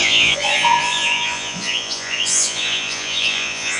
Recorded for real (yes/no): no